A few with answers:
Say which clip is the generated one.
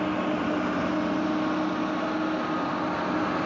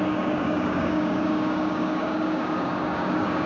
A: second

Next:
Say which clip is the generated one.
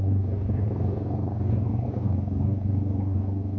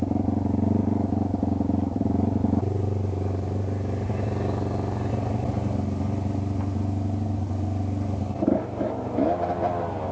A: first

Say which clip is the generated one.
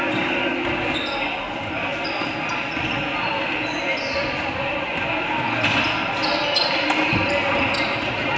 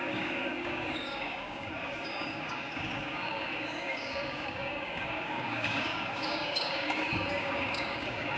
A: second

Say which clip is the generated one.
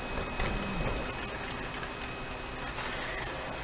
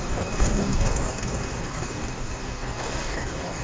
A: second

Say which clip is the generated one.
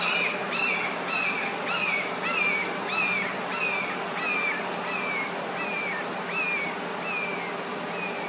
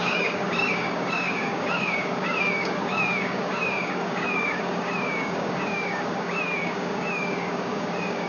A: second